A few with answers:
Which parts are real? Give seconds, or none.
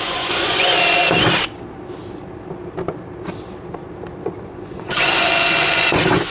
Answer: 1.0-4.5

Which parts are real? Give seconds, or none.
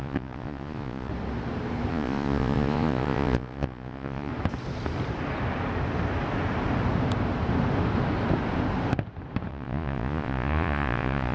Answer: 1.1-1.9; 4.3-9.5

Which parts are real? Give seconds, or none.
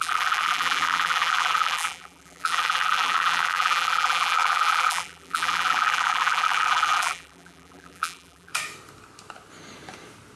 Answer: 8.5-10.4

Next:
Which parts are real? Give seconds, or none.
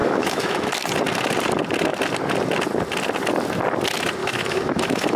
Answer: 0.7-4.2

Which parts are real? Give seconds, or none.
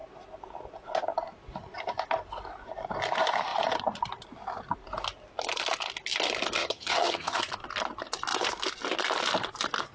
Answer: 0.0-6.6; 7.4-9.9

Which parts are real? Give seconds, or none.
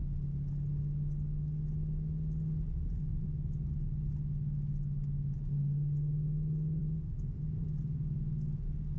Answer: 0.0-6.8; 7.4-9.0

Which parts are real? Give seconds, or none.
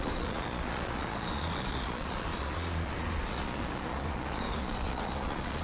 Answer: none